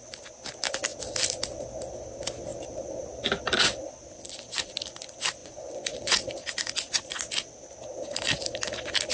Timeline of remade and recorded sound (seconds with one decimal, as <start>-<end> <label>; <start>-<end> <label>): 0.0-5.4 recorded; 5.4-6.2 remade; 6.2-9.1 recorded